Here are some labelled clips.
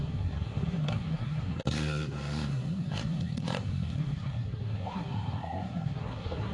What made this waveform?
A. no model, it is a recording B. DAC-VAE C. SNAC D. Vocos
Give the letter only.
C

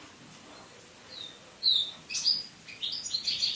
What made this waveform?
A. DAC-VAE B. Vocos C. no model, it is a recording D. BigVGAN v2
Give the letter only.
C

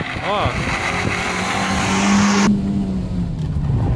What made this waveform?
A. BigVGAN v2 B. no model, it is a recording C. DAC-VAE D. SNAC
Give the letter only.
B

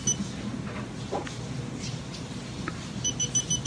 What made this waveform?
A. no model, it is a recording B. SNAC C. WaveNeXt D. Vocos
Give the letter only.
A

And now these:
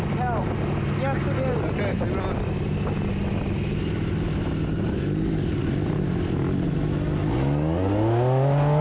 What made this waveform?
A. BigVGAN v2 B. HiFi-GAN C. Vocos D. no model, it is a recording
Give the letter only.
D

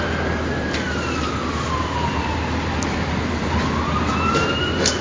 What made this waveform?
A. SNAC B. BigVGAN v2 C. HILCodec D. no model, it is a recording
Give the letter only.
D